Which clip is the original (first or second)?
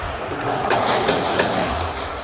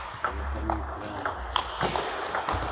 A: second